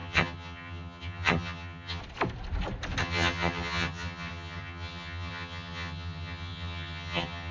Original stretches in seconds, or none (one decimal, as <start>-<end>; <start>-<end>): 2.0-3.0